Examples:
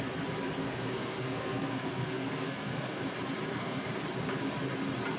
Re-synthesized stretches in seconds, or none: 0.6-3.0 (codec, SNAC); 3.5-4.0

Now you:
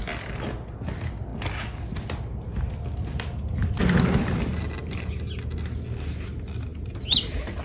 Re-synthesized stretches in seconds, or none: none

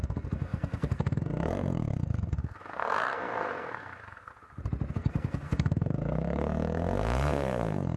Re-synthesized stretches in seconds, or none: 0.0-4.3 (codec, SNAC); 4.9-8.0

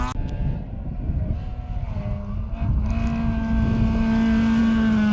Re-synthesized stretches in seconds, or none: none

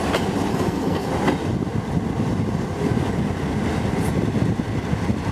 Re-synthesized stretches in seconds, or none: 0.5-1.1 (codec, SNAC)

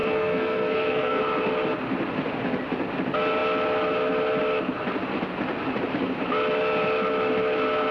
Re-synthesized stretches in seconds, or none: 0.0-1.2 (codec, SNAC)